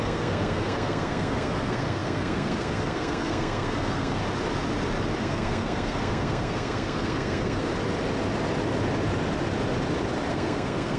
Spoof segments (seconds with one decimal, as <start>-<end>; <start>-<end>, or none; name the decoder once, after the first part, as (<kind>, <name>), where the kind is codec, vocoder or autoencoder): 0.0-4.2 (codec, SNAC); 5.2-7.7; 10.3-11.0